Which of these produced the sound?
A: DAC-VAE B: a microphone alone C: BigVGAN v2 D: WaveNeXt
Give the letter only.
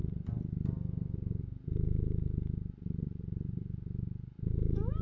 B